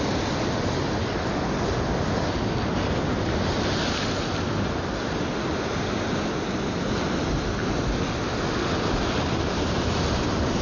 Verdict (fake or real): real